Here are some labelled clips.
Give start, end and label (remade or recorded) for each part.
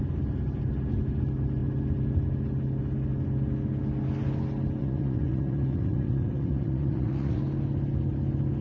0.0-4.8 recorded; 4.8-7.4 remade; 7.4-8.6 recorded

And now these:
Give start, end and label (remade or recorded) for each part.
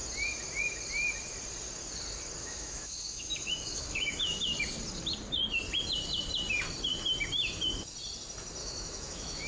0.0-2.4 recorded; 2.4-4.4 remade; 4.4-8.6 recorded; 8.6-9.5 remade